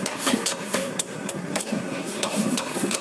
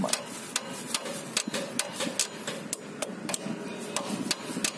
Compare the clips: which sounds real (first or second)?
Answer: second